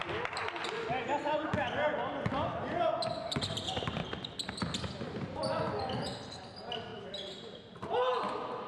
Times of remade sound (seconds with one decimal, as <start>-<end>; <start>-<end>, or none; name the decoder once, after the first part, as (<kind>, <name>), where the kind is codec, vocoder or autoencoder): none